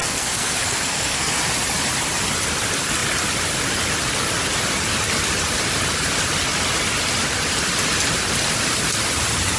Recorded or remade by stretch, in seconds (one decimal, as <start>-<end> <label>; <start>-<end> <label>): 0.0-1.4 remade; 1.4-9.6 recorded